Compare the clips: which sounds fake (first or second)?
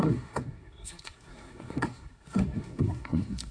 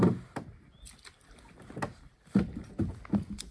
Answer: first